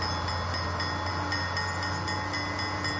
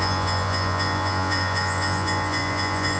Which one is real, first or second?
first